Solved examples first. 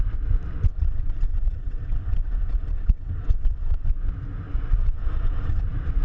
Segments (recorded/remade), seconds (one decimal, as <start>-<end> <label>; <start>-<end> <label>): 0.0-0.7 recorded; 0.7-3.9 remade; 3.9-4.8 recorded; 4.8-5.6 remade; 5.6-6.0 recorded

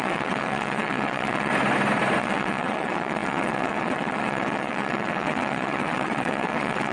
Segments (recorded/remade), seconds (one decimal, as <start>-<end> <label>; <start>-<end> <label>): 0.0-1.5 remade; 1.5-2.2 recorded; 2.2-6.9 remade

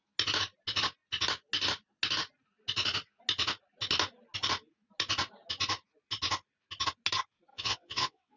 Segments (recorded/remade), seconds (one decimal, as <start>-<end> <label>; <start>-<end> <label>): 0.0-7.5 recorded; 7.5-8.4 remade

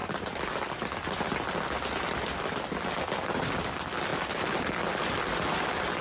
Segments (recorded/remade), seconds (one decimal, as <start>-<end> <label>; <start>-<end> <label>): 0.0-6.0 recorded

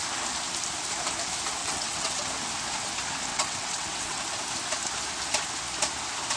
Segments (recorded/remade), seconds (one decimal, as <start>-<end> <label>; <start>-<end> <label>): 0.0-1.6 recorded; 1.6-2.3 remade; 2.3-3.3 recorded; 3.3-4.2 remade; 4.2-6.4 recorded